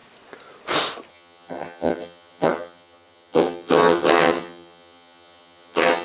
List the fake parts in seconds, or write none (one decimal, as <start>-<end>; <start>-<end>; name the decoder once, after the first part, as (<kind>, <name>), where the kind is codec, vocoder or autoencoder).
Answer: 1.1-6.0 (vocoder, HiFi-GAN)